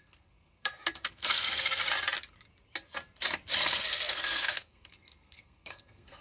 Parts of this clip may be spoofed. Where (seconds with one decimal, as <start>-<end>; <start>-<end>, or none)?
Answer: 0.0-1.8; 3.7-6.2